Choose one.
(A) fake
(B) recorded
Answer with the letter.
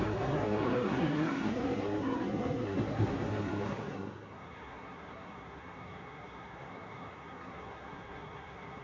A